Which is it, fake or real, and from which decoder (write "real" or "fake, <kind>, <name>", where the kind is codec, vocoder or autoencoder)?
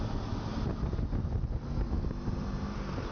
real